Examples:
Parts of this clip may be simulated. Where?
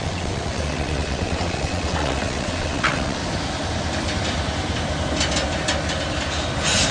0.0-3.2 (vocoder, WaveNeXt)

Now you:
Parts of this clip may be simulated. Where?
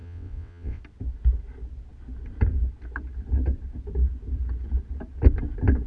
0.0-0.8 (vocoder, WaveNeXt)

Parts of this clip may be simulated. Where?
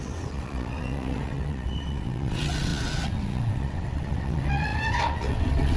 0.0-5.8 (vocoder, WaveNeXt)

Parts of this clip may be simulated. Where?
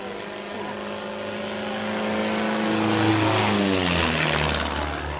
none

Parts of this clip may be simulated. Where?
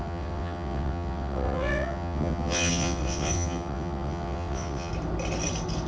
0.0-4.9 (vocoder, WaveNeXt)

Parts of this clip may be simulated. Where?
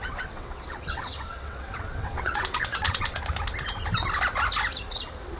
0.0-3.2 (vocoder, WaveNeXt)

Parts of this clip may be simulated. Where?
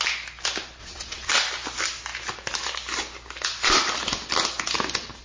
0.8-1.3 (vocoder, WaveNeXt)